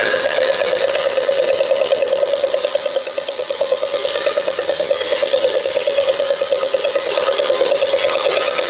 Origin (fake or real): fake